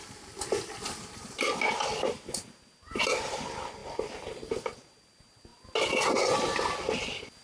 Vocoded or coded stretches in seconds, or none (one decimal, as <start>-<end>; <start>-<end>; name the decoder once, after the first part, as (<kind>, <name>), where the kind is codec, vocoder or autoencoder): none